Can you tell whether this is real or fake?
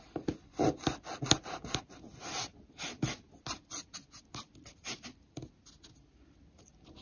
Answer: real